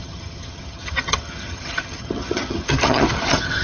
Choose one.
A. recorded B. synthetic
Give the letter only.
B